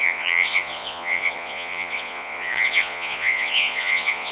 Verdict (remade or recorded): remade